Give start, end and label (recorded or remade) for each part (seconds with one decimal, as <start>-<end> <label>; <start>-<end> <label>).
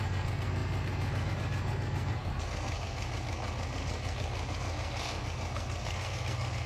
0.0-6.7 remade